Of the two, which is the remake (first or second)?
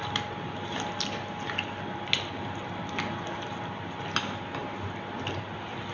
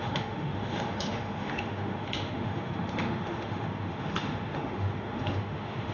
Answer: second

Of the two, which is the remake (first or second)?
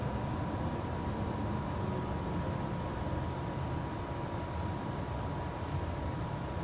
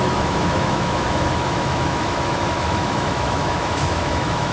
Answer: second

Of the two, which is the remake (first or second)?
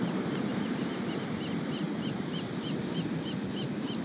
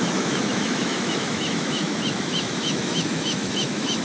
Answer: second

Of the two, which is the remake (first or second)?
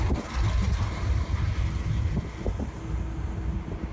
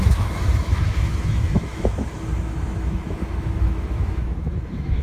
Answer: second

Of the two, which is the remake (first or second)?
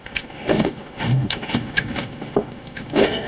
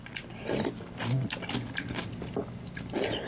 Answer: first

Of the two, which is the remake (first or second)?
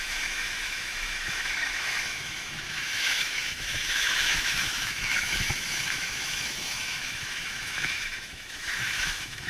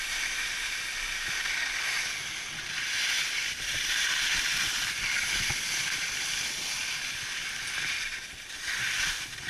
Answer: first